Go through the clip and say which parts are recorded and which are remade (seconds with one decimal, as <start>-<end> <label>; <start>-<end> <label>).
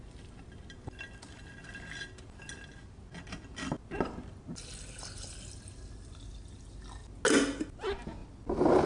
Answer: 0.0-8.9 recorded